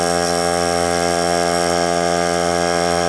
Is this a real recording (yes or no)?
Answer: no